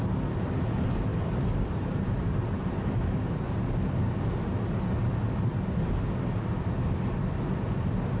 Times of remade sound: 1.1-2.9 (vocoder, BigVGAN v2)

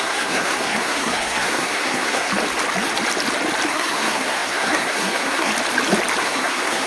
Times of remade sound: 0.0-2.3 (codec, SNAC); 3.7-5.5; 6.2-6.9

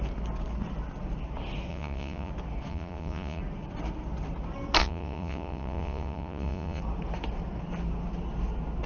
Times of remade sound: 1.7-2.3 (vocoder, Vocos); 2.7-3.4; 4.8-6.8